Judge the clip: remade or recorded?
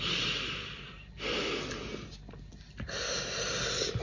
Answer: recorded